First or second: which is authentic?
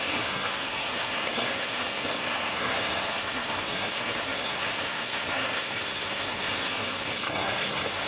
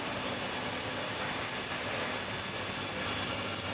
second